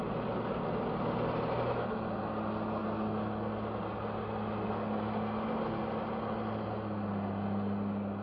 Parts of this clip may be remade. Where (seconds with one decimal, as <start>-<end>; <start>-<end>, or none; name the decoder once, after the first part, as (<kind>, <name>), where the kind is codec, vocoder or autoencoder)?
none